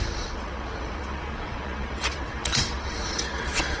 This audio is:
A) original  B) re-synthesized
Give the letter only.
B